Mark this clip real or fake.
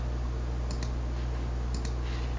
real